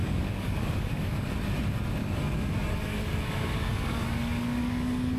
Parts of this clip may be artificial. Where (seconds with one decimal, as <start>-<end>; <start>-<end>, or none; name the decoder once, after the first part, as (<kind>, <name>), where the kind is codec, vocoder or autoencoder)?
0.0-1.3 (codec, DAC); 2.0-5.2

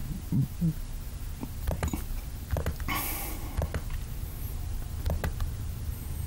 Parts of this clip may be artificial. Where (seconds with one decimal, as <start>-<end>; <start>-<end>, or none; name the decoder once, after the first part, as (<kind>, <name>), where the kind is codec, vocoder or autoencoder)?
none

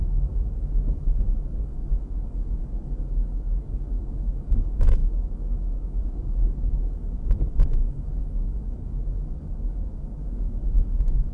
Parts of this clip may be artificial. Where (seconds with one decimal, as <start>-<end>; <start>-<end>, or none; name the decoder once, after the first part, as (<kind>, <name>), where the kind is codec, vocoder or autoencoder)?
0.0-7.0 (codec, DAC); 7.8-11.3